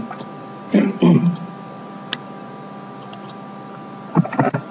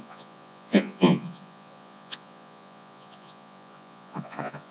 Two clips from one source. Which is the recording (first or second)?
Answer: first